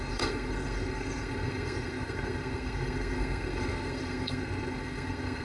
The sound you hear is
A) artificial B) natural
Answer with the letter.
A